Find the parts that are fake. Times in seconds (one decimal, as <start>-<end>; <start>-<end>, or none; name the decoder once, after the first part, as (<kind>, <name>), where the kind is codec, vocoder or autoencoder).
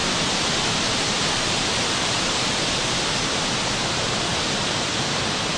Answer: 0.0-3.4 (vocoder, BigVGAN v2); 4.3-5.6